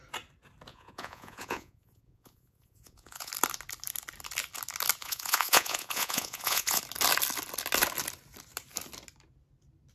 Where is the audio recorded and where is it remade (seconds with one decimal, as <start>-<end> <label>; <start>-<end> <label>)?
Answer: 0.0-0.7 recorded; 0.7-3.3 remade; 3.3-5.0 recorded; 5.0-6.8 remade; 6.8-9.9 recorded